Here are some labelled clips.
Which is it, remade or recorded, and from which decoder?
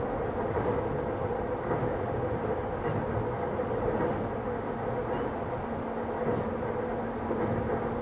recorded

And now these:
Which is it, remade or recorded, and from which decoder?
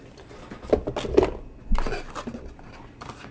recorded